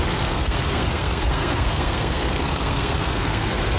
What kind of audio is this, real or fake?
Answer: fake